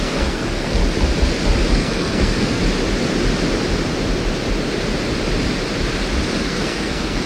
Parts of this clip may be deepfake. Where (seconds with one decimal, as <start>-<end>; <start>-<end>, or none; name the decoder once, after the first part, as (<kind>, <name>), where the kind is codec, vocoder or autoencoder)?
0.0-0.8 (codec, SNAC); 1.7-2.6; 6.4-7.3